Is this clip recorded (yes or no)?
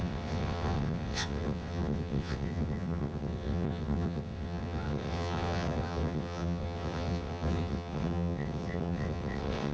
no